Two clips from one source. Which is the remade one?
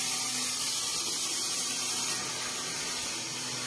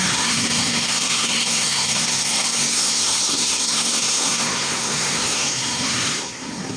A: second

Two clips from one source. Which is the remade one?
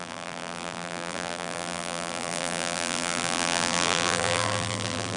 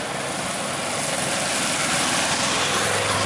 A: first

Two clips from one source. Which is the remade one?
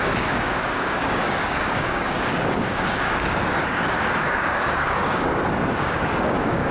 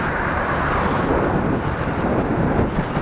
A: first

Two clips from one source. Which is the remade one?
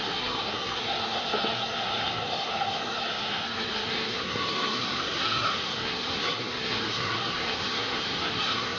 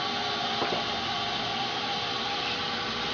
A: first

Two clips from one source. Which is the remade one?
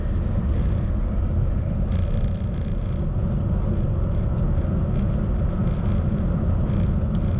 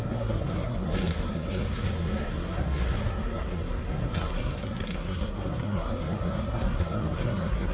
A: second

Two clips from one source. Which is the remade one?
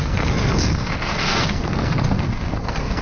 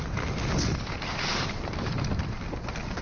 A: first